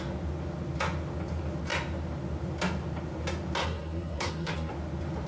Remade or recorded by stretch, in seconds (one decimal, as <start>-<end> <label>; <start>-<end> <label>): 0.0-3.6 recorded; 3.6-4.7 remade; 4.7-5.3 recorded